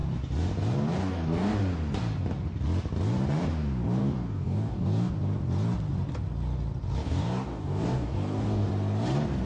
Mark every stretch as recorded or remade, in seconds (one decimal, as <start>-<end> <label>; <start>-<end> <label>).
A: 0.0-1.0 recorded; 1.0-1.6 remade; 1.6-4.0 recorded; 4.0-5.1 remade; 5.1-7.0 recorded; 7.0-8.7 remade; 8.7-9.5 recorded

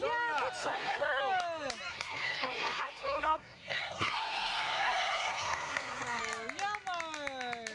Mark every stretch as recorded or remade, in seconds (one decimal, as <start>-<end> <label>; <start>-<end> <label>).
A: 0.0-0.6 recorded; 0.6-1.2 remade; 1.2-1.9 recorded; 1.9-6.2 remade; 6.2-7.7 recorded

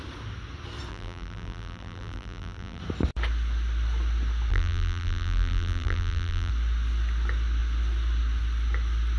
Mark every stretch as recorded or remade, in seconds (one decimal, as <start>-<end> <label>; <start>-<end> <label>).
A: 0.0-0.9 recorded; 0.9-2.8 remade; 2.8-4.5 recorded; 4.5-6.5 remade; 6.5-9.2 recorded